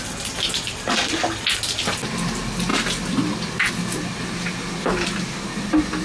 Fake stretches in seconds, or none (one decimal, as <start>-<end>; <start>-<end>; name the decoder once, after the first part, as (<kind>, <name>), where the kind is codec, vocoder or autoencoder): none